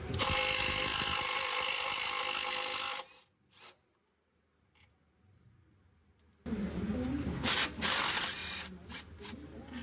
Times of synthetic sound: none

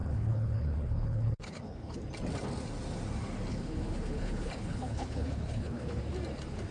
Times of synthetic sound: 0.0-2.0 (codec, HILCodec); 3.5-6.0

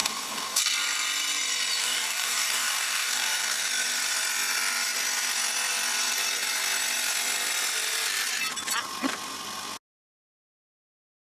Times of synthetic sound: 0.0-0.6 (codec, DAC); 1.8-3.7

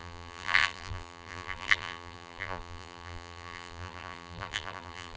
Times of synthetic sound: 0.0-5.2 (vocoder, BigVGAN v2)